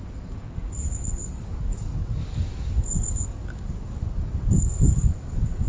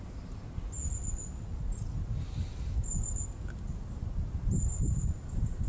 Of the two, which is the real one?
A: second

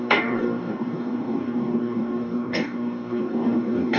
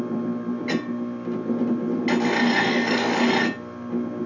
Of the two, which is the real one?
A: second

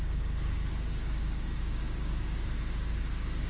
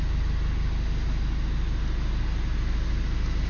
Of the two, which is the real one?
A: second